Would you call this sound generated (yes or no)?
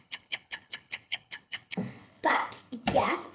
yes